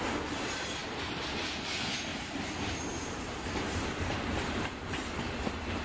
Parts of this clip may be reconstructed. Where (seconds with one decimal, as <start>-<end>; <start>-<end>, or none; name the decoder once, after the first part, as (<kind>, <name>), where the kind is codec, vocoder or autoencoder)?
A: 0.8-1.4 (vocoder, BigVGAN v2); 2.1-5.1